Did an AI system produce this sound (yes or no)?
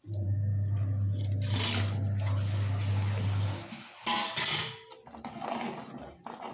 no